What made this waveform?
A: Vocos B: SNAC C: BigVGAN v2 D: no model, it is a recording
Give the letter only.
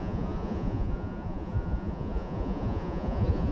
A